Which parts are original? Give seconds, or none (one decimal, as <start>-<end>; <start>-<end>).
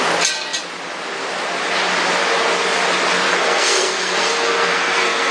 0.0-3.3